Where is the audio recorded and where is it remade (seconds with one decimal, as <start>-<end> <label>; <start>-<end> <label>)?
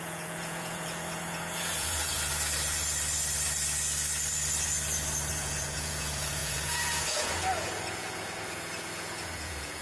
0.0-2.3 remade; 2.3-5.3 recorded; 5.3-9.8 remade